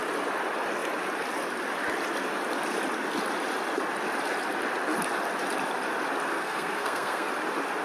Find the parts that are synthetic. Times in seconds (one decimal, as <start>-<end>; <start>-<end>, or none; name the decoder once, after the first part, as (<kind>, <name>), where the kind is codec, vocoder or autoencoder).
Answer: 6.3-7.3 (codec, SNAC)